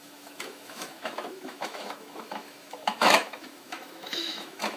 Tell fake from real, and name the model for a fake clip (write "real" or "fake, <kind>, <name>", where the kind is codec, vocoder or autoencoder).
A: fake, autoencoder, DAC-VAE